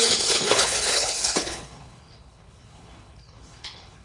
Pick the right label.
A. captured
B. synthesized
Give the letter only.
B